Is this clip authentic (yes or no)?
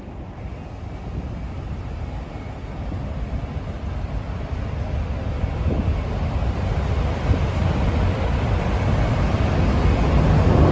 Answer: yes